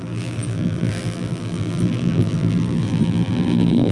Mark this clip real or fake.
fake